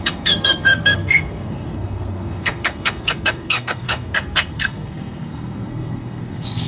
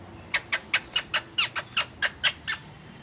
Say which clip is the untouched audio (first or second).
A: second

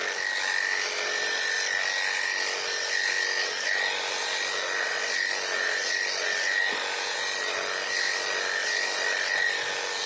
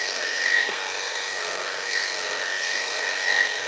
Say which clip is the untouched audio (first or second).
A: first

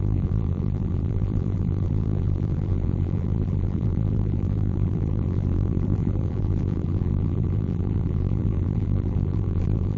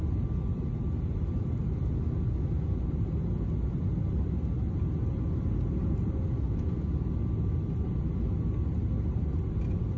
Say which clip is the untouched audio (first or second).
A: second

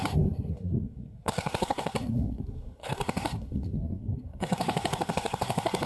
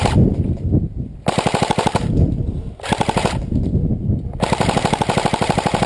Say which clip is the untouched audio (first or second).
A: second